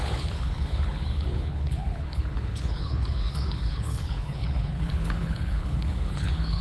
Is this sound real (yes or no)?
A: no